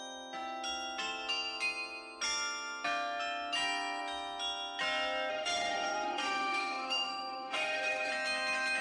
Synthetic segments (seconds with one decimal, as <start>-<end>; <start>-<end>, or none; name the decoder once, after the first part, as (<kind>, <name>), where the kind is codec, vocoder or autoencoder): 5.3-8.1 (autoencoder, DAC-VAE)